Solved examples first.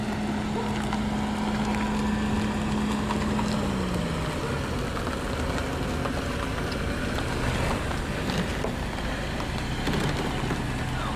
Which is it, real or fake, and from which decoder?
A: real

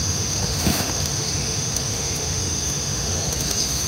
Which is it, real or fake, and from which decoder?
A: fake, autoencoder, DAC-VAE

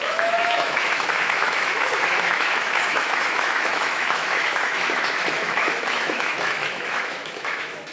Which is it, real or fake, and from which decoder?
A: fake, autoencoder, DAC-VAE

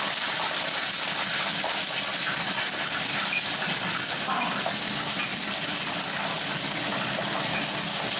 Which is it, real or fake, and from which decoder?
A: real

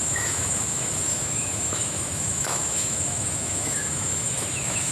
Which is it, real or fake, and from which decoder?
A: fake, autoencoder, DAC-VAE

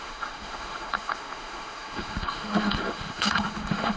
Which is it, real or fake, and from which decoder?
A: fake, autoencoder, DAC-VAE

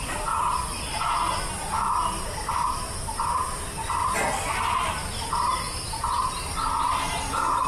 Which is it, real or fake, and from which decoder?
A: real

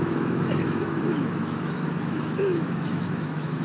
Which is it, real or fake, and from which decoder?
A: fake, autoencoder, DAC-VAE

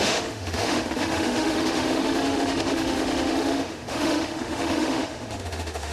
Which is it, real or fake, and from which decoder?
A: fake, autoencoder, DAC-VAE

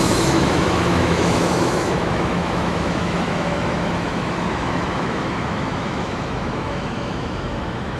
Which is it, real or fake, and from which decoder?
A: fake, autoencoder, DAC-VAE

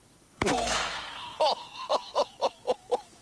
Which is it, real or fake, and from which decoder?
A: fake, autoencoder, DAC-VAE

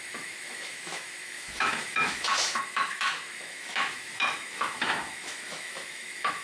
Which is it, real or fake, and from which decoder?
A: fake, autoencoder, DAC-VAE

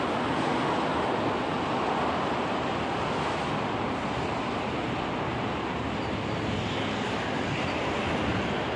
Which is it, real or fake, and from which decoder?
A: real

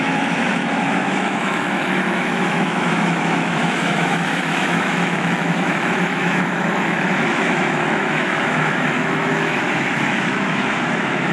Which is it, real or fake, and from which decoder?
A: fake, autoencoder, DAC-VAE